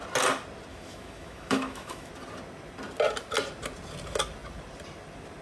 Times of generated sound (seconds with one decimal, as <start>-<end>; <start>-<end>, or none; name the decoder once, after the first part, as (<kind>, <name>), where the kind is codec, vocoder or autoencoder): 0.7-2.1 (autoencoder, DAC-VAE)